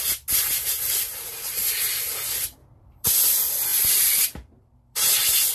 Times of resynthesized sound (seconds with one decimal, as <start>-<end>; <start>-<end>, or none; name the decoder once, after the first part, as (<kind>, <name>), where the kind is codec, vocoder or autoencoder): 0.7-2.1 (vocoder, BigVGAN v2); 2.6-3.2; 3.7-5.5